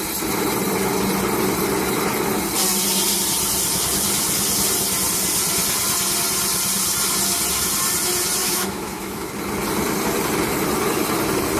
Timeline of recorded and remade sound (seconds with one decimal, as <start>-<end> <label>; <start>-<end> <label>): 0.0-8.4 recorded; 8.4-9.3 remade; 9.3-11.6 recorded